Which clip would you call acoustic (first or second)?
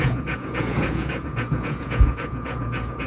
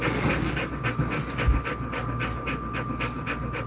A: second